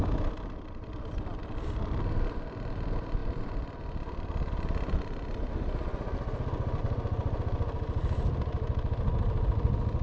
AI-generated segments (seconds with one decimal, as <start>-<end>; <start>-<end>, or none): none